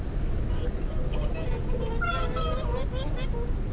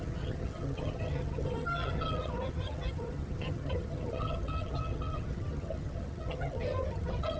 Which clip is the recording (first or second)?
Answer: first